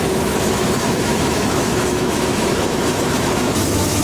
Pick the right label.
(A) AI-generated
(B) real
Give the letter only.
A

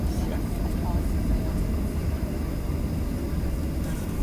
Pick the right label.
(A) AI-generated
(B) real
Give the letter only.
B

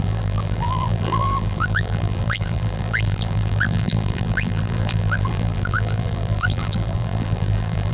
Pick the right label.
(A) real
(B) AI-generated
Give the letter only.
B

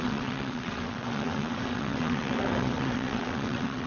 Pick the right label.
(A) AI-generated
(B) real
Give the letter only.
A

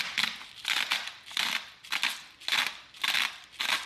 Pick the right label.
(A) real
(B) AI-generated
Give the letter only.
A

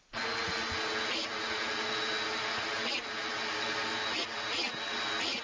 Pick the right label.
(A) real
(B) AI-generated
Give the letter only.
A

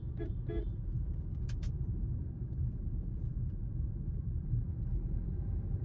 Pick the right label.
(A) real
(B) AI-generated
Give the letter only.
B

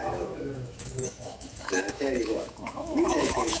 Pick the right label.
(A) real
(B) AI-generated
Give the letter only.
B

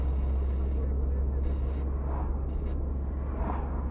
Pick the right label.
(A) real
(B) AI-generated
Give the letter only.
A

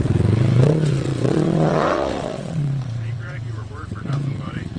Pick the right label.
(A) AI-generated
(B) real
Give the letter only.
A